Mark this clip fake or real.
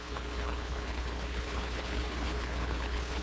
fake